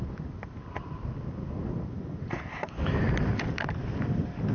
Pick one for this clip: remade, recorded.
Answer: recorded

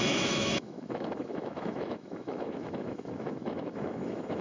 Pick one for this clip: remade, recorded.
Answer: remade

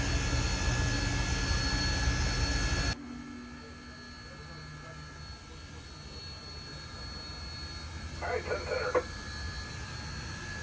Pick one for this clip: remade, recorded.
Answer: recorded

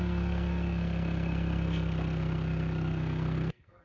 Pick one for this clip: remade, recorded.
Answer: remade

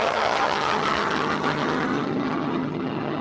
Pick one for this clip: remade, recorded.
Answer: remade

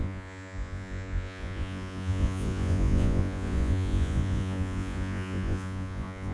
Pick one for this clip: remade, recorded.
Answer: remade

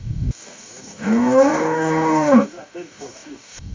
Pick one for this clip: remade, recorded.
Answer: remade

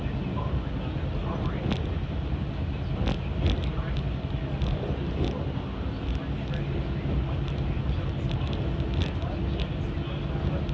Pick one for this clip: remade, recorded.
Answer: recorded